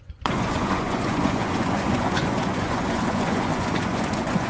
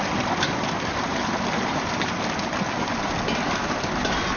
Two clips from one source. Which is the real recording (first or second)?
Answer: second